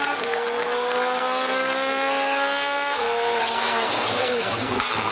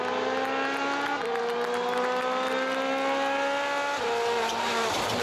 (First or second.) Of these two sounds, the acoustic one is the second